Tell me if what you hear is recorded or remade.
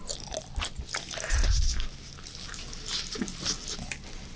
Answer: recorded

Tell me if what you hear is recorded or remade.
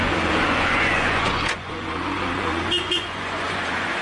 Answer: remade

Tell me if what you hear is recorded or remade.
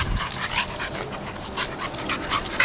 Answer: recorded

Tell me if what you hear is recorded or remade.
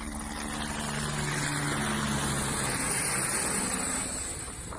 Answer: recorded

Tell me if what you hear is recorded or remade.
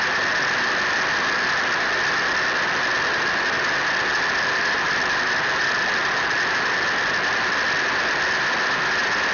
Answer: recorded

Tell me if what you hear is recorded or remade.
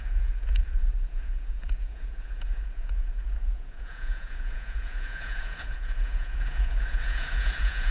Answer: remade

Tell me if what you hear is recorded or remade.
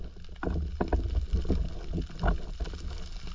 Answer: recorded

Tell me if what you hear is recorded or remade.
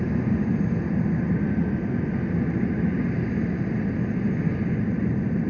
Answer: recorded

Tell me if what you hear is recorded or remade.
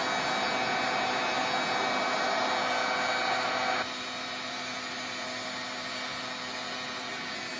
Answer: recorded